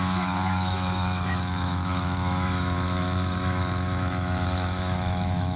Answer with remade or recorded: remade